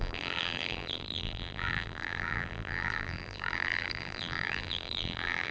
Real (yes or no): no